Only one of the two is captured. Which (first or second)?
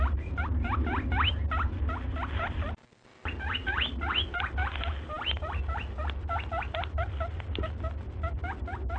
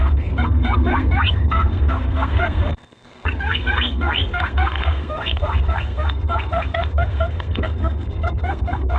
first